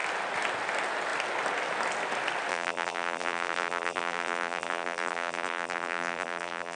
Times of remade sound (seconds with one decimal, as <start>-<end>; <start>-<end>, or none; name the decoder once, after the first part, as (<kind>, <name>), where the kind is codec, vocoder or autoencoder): 2.5-6.8 (vocoder, BigVGAN v2)